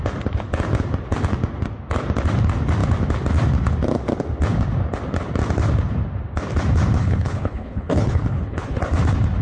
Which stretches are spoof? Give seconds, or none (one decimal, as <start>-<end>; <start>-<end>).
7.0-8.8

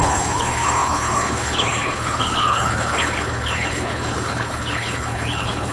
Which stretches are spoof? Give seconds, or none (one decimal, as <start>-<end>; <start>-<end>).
0.0-5.7

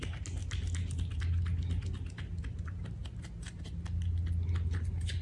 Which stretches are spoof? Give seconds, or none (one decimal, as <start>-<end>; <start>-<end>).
none

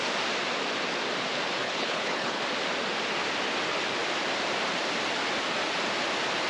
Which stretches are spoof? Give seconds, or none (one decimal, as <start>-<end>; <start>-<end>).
1.6-2.4

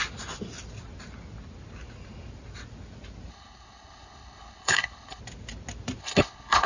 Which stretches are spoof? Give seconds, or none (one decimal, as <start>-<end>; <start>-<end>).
3.3-5.2; 6.0-6.7

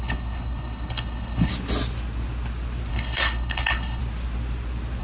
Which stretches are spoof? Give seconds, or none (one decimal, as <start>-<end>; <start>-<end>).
0.0-1.5; 2.9-4.0